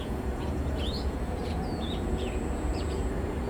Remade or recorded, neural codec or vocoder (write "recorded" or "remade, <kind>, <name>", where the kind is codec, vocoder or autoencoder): remade, vocoder, Vocos